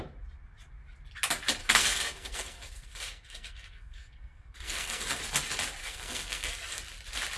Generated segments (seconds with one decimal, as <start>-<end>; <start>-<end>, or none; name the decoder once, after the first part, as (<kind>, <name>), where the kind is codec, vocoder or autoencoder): 1.6-5.2 (codec, SNAC); 5.8-6.8